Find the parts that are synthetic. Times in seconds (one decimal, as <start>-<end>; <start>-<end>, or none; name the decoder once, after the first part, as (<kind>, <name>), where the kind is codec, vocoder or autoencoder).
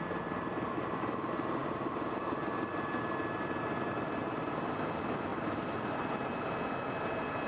none